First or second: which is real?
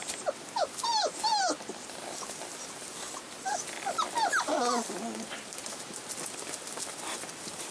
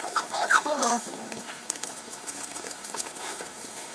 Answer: first